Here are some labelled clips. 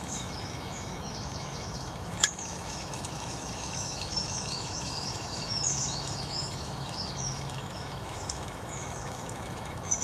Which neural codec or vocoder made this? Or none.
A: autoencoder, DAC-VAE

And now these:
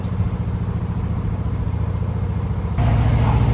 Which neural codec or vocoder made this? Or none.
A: none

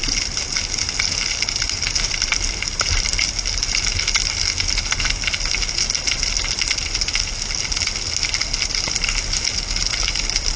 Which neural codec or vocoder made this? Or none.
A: none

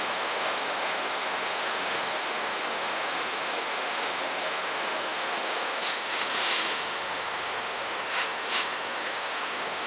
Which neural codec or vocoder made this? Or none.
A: autoencoder, DAC-VAE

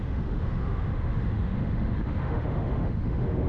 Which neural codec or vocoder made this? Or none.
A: autoencoder, DAC-VAE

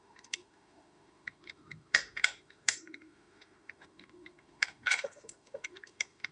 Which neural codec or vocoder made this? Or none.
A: autoencoder, DAC-VAE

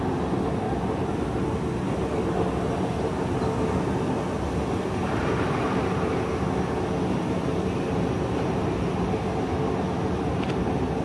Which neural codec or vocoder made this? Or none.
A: none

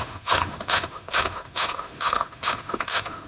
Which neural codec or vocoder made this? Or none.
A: autoencoder, DAC-VAE